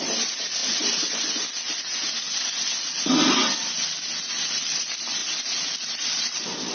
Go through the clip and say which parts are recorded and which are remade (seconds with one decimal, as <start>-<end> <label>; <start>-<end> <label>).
0.0-0.6 remade; 0.6-4.6 recorded; 4.6-5.2 remade; 5.2-5.9 recorded; 5.9-6.7 remade